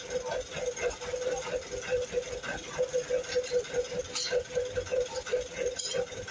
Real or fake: real